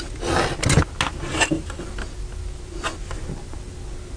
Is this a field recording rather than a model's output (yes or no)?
yes